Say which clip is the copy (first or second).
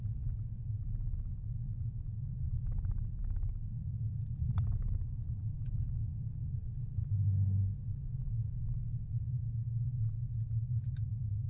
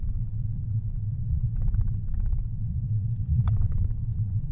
second